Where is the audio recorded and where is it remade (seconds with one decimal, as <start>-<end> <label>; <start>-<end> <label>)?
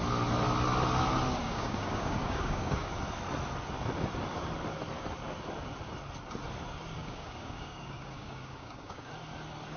0.0-1.4 recorded; 1.4-2.9 remade; 2.9-7.0 recorded; 7.0-9.1 remade; 9.1-9.8 recorded